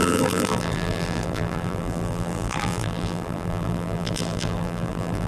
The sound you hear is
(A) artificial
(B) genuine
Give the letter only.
A